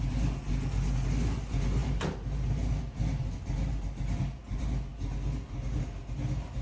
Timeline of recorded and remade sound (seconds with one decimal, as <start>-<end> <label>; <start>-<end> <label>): 0.0-6.6 recorded